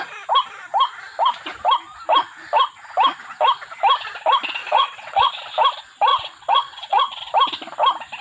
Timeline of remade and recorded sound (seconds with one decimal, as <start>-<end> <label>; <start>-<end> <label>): 0.0-4.6 recorded; 4.6-5.3 remade; 5.3-6.1 recorded; 6.1-7.3 remade; 7.3-8.2 recorded